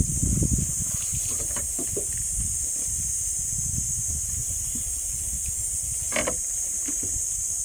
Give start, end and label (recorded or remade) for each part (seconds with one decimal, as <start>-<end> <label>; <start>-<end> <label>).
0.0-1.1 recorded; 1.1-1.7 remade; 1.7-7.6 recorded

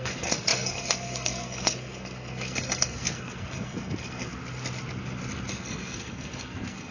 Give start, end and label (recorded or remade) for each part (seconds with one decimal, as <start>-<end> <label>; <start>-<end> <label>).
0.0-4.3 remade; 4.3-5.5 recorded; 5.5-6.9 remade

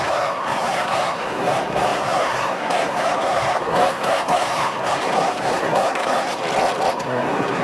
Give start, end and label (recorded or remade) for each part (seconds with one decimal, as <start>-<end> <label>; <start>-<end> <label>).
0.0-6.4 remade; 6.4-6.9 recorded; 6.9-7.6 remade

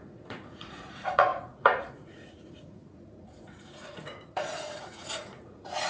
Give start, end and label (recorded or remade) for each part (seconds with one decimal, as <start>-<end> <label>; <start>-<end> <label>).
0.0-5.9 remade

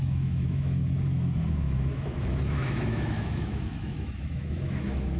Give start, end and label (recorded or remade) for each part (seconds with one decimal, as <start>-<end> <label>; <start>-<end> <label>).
0.0-0.8 remade; 0.8-1.5 recorded; 1.5-5.2 remade